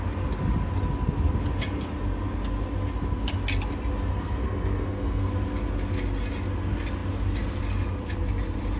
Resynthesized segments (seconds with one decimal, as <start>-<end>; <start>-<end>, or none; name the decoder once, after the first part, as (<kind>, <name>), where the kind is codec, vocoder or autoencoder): 4.1-5.3 (codec, SNAC)